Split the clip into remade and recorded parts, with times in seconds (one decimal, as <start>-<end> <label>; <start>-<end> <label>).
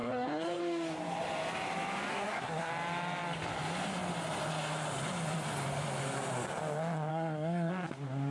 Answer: 0.0-0.6 remade; 0.6-2.1 recorded; 2.1-2.7 remade; 2.7-7.1 recorded; 7.1-7.7 remade; 7.7-8.3 recorded